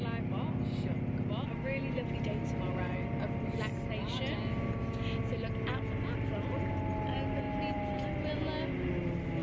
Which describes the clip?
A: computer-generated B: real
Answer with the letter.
B